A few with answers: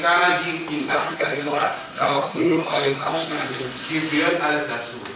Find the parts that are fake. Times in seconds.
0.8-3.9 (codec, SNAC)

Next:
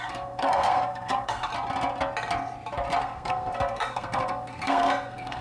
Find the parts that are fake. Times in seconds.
0.0-1.5 (codec, SNAC); 3.0-5.4

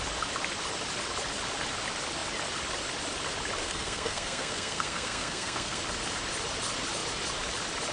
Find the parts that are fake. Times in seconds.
3.6-5.8 (codec, SNAC)

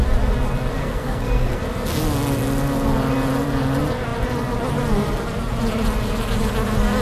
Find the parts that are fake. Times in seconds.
0.8-1.6 (codec, SNAC)

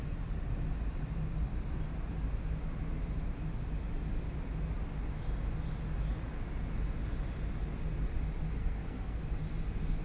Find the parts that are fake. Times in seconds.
8.6-9.2 (codec, SNAC)

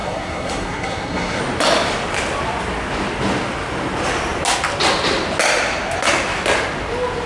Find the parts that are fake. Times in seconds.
0.0-1.4 (codec, SNAC)

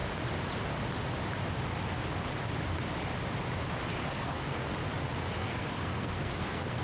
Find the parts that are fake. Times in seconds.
4.0-4.7 (codec, SNAC); 5.4-6.8

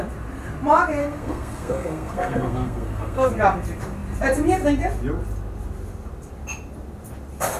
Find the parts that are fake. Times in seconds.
1.0-3.3 (codec, SNAC)